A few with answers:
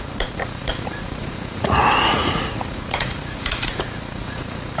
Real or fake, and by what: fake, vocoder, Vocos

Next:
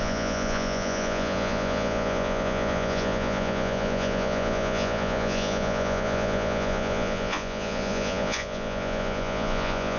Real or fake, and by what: fake, vocoder, Vocos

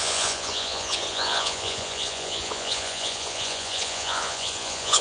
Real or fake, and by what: fake, vocoder, Vocos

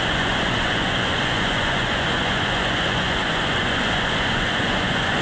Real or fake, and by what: fake, vocoder, Vocos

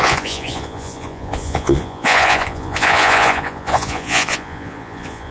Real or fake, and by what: fake, vocoder, Vocos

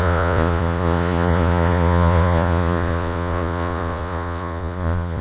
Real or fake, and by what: fake, vocoder, Vocos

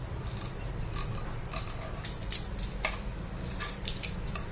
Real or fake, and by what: real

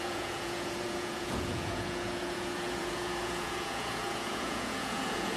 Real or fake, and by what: fake, vocoder, Vocos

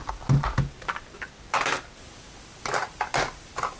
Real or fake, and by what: real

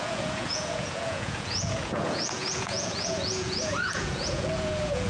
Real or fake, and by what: fake, vocoder, Vocos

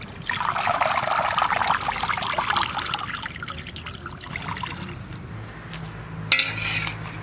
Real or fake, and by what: real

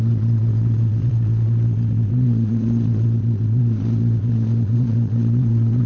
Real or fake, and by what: fake, vocoder, Vocos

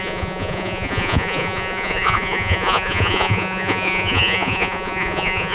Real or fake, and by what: fake, vocoder, Vocos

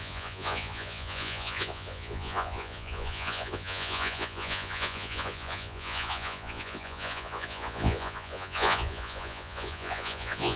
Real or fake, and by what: fake, vocoder, Vocos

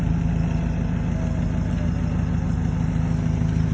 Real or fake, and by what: real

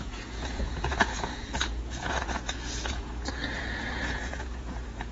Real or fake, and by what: fake, vocoder, Vocos